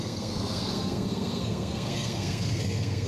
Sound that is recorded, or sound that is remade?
remade